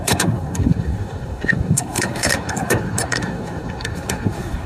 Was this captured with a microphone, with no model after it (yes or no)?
no